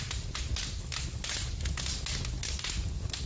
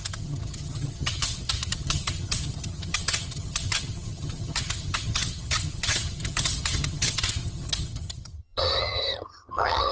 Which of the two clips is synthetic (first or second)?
second